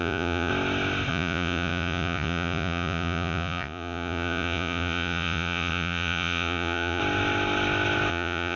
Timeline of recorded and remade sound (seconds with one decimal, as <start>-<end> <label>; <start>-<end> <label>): 0.0-0.5 remade; 0.5-1.1 recorded; 1.1-7.0 remade; 7.0-8.1 recorded; 8.1-8.6 remade